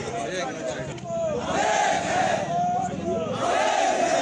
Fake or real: real